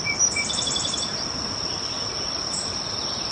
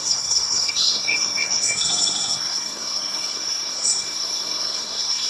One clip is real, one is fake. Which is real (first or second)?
first